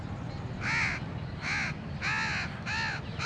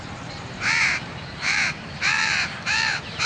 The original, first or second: first